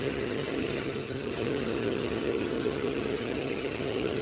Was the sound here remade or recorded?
remade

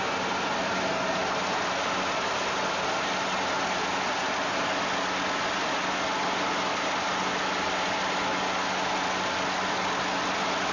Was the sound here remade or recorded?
recorded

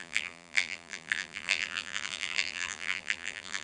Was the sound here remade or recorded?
remade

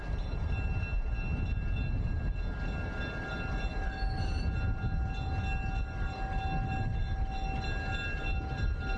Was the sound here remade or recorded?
recorded